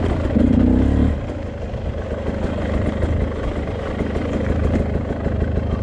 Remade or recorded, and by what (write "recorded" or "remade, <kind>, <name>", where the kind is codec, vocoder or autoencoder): recorded